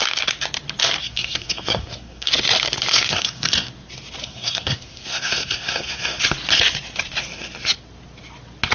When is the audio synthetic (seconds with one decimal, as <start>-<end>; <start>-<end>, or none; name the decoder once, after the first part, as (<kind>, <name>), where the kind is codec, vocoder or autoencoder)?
1.0-2.3 (codec, SNAC); 2.9-3.7; 4.2-6.2